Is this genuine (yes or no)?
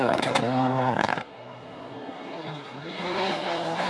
no